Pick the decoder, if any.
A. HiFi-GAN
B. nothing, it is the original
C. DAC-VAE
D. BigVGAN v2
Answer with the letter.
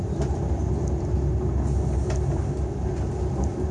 B